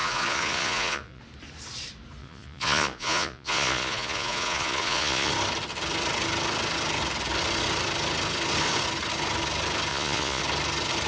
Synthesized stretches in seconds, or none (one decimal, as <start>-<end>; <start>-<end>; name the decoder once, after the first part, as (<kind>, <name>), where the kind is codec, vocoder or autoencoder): 0.0-1.2 (vocoder, Vocos); 2.2-5.3; 9.9-10.4